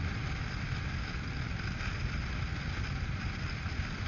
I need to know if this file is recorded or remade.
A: recorded